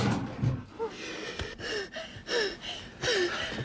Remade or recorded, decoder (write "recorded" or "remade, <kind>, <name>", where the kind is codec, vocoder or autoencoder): recorded